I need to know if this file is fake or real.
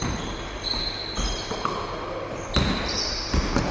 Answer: real